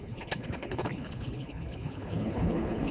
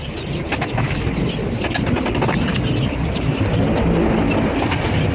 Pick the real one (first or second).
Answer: second